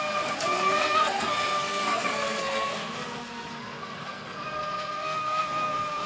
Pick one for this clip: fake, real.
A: fake